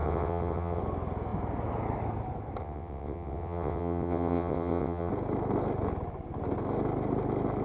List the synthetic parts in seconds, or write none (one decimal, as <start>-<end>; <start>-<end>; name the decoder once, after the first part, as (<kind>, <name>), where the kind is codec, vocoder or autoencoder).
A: 0.0-0.8 (vocoder, WaveNeXt); 2.6-5.1